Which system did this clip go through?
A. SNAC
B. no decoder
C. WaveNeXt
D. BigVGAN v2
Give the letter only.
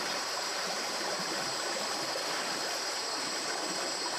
D